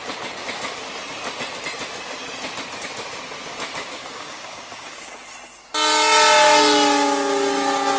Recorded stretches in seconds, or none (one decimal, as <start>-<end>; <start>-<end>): 0.0-3.8; 5.1-8.0